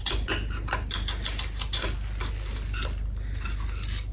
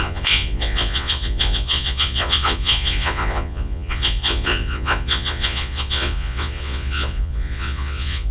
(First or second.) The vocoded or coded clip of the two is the second